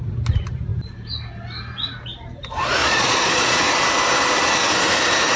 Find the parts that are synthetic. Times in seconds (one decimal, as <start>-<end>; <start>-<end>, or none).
2.8-3.7